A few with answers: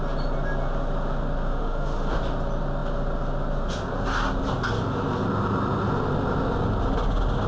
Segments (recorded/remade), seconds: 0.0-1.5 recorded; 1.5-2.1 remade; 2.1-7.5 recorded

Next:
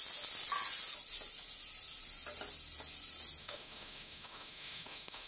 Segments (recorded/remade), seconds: 0.0-3.4 recorded; 3.4-5.3 remade

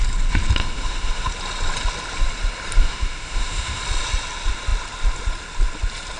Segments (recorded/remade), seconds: 0.0-0.6 recorded; 0.6-1.3 remade; 1.3-2.8 recorded; 2.8-3.8 remade; 3.8-6.2 recorded

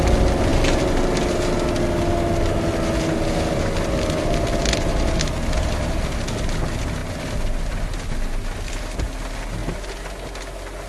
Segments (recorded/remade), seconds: 0.0-10.9 recorded